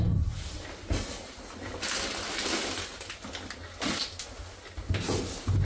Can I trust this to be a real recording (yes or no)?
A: yes